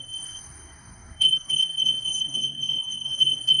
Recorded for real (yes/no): no